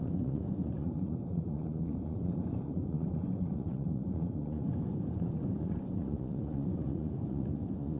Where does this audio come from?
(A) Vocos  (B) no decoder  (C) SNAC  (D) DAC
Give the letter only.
A